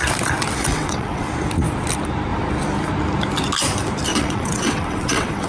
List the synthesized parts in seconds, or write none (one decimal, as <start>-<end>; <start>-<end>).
0.7-1.3; 4.1-5.5